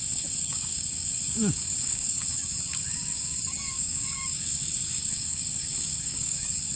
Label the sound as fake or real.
fake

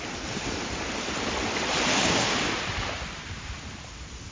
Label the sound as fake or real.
real